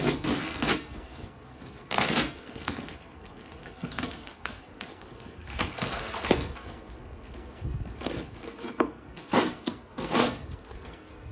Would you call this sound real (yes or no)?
no